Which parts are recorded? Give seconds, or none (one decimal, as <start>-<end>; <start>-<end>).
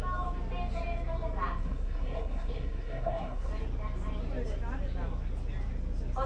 0.0-1.6; 3.5-6.3